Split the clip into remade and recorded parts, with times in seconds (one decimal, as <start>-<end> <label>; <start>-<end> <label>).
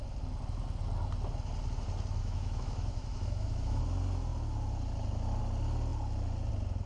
0.0-2.2 recorded; 2.2-3.8 remade; 3.8-6.9 recorded